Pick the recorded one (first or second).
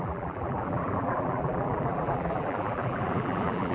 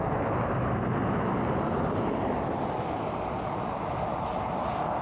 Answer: second